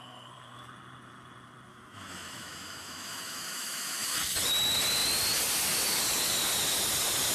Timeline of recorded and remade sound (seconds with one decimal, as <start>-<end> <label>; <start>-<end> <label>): 0.0-1.7 recorded; 1.7-4.1 remade; 4.1-7.3 recorded